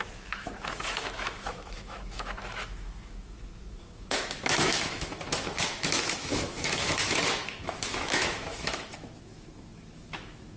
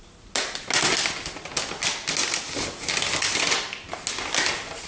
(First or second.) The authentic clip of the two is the second